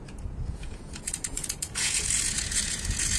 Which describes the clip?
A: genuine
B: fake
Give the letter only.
B